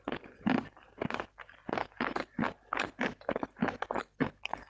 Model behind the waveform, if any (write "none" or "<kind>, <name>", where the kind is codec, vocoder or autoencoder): none